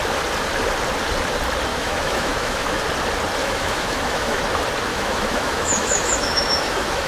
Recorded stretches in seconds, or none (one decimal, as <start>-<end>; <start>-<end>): 0.0-1.7; 2.8-3.4; 4.4-4.9